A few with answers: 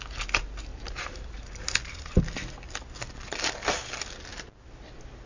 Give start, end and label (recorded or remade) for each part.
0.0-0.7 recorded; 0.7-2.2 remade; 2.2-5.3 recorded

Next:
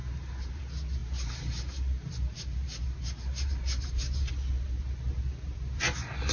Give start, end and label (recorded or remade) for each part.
0.0-0.6 remade; 0.6-1.0 recorded; 1.0-4.3 remade; 4.3-6.3 recorded

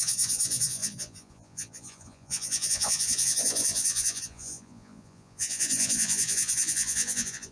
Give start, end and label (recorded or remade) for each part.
0.0-7.5 remade

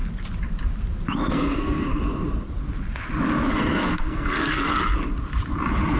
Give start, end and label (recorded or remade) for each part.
0.0-1.3 recorded; 1.3-2.0 remade; 2.0-3.5 recorded; 3.5-4.7 remade; 4.7-6.0 recorded

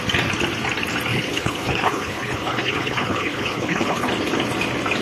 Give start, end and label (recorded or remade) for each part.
0.0-1.1 recorded; 1.1-4.1 remade; 4.1-5.0 recorded

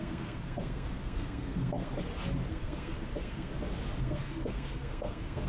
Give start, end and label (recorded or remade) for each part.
0.0-1.9 remade; 1.9-2.5 recorded; 2.5-3.5 remade; 3.5-4.0 recorded; 4.0-5.5 remade

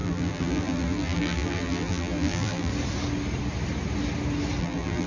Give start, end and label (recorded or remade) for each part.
0.0-2.7 remade; 2.7-4.6 recorded; 4.6-5.1 remade